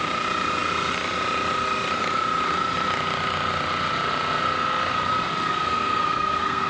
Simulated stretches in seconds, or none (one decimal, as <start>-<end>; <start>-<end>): 5.5-6.7